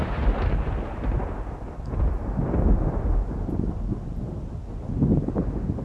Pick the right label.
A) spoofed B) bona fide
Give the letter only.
B